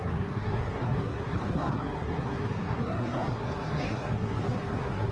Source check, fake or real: fake